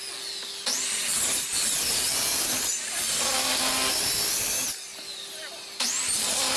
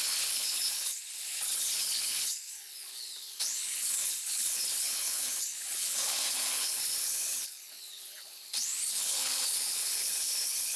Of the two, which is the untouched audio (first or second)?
first